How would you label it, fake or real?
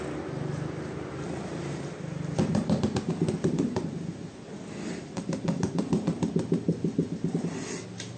real